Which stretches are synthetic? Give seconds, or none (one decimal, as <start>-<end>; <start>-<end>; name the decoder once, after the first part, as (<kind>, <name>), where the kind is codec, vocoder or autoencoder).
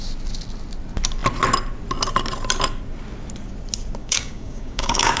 4.0-5.2 (codec, DAC)